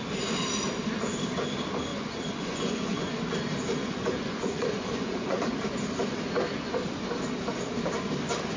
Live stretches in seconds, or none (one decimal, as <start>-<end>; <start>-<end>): 0.0-1.9; 3.2-3.8; 5.4-8.6